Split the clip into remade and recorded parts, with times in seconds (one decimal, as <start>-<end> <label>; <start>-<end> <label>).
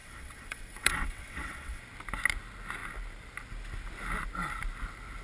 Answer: 0.0-1.8 remade; 1.8-5.2 recorded